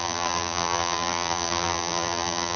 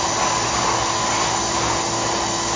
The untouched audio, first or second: second